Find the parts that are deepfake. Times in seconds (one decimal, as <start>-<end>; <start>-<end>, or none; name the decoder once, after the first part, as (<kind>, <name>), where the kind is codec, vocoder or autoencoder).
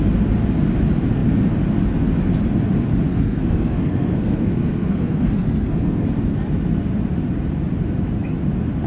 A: 3.1-6.1 (codec, SNAC)